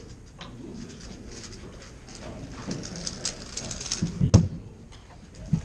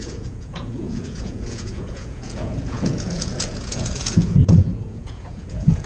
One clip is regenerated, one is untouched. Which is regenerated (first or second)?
second